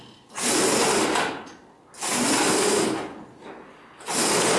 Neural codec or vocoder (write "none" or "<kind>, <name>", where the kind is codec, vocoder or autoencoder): none